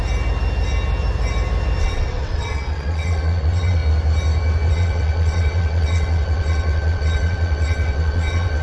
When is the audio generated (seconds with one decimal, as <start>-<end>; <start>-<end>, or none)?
1.8-3.8; 4.7-8.6